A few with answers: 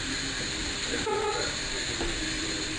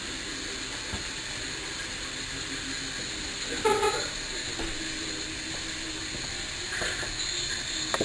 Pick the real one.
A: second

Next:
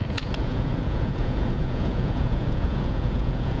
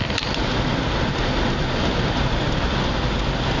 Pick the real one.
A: second